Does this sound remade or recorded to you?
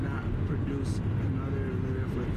recorded